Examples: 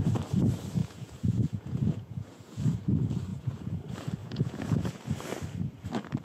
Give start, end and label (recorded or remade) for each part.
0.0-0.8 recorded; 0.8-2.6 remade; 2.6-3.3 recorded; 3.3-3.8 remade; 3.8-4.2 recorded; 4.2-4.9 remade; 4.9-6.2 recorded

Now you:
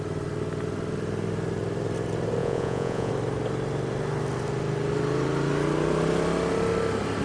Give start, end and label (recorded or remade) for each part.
0.0-2.4 recorded; 2.4-3.1 remade; 3.1-7.2 recorded